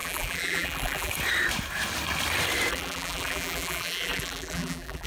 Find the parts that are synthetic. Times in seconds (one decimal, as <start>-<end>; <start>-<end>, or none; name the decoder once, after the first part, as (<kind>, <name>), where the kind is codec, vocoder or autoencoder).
0.0-1.1 (vocoder, BigVGAN v2); 2.7-5.1